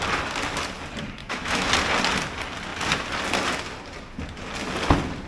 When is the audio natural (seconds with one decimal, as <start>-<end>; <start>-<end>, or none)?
0.0-1.2; 1.7-5.3

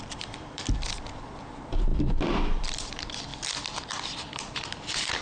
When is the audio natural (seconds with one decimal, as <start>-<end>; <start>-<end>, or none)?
none

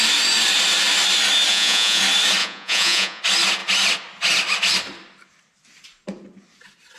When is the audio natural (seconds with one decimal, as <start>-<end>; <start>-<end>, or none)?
0.0-1.5; 2.0-2.4; 3.2-7.0

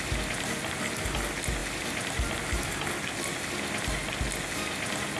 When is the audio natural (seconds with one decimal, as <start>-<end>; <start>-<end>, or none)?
0.0-5.2

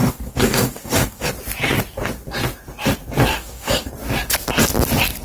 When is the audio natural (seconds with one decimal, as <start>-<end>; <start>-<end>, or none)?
1.3-3.3; 3.9-5.2